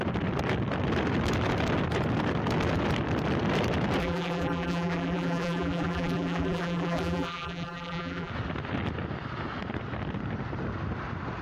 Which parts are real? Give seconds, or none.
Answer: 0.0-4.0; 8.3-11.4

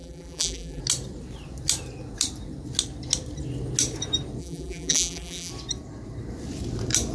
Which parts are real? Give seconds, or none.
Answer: 0.8-4.4; 5.5-7.1

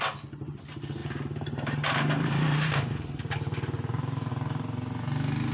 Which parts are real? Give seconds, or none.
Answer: 0.0-1.0; 4.3-5.5

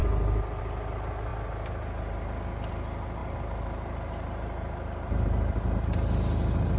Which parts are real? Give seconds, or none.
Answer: 0.0-3.2

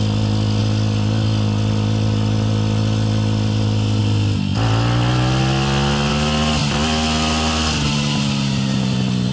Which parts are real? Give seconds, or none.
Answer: 0.0-9.3

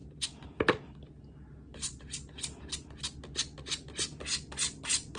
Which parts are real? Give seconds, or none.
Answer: 0.0-5.2